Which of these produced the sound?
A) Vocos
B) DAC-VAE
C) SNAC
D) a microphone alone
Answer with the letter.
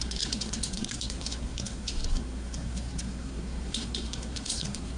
C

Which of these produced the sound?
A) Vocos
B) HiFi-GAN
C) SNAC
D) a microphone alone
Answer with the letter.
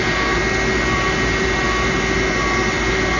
D